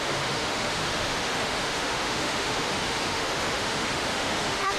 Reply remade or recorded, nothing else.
remade